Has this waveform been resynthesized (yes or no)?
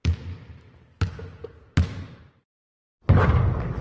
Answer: no